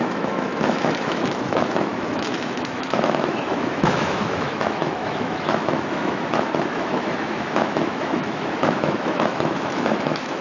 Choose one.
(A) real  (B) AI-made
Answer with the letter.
B